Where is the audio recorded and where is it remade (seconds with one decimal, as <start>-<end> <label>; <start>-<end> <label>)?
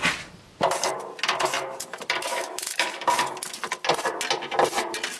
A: 0.0-2.3 recorded; 2.3-3.1 remade; 3.1-5.2 recorded